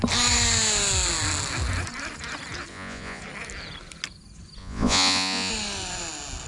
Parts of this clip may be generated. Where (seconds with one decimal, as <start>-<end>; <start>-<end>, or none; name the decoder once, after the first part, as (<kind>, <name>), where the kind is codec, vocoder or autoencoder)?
2.7-3.2 (vocoder, Vocos); 4.6-5.5